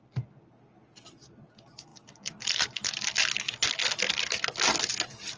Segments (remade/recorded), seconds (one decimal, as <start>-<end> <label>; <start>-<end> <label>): 0.0-5.4 recorded